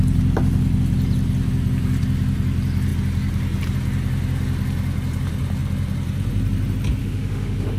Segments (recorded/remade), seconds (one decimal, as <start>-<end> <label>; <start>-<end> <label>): 0.0-7.0 recorded; 7.0-7.8 remade